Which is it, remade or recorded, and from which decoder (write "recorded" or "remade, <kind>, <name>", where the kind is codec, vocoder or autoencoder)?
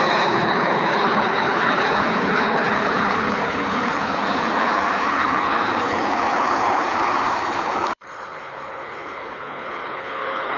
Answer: remade, codec, HILCodec